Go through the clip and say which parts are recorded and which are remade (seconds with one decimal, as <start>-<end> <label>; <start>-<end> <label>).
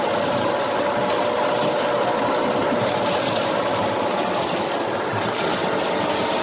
0.0-2.6 recorded; 2.6-4.5 remade; 4.5-4.9 recorded; 4.9-5.4 remade; 5.4-6.4 recorded